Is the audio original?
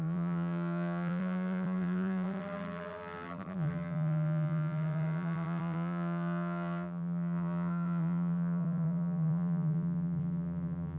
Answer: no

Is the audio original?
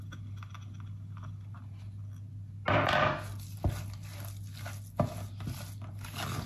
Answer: yes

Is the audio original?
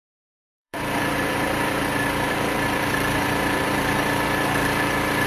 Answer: no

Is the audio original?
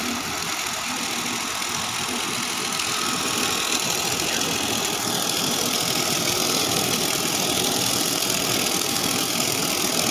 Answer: no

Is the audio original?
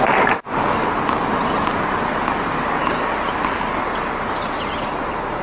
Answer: yes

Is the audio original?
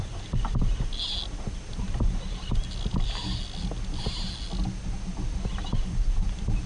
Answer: yes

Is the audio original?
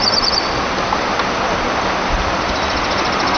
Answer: yes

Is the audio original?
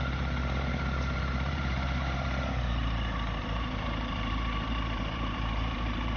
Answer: no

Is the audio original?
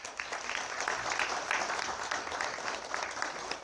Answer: yes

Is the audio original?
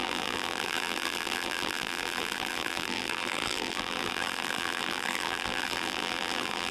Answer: no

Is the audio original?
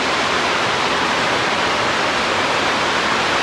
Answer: yes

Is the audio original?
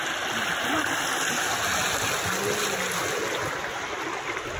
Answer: yes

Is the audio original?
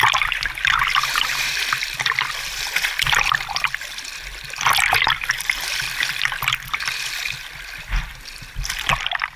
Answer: no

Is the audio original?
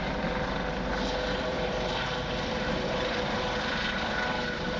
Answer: no